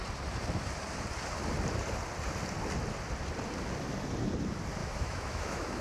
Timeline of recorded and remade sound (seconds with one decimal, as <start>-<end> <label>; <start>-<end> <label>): 0.0-4.8 recorded; 4.8-5.8 remade